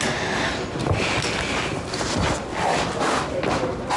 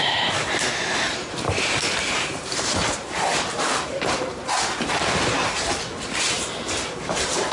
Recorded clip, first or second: first